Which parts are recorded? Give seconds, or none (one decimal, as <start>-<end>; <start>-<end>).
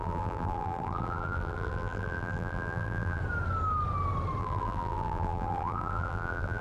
3.2-4.4